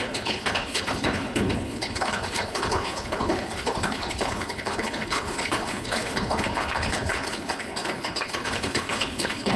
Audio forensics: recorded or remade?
remade